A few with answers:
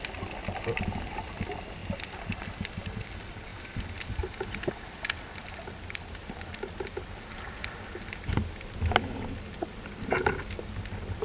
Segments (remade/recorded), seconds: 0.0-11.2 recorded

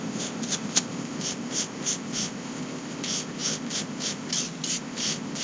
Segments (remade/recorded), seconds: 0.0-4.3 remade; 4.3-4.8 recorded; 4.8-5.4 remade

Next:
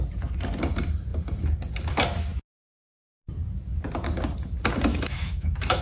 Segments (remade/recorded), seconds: 0.0-4.9 recorded; 4.9-5.8 remade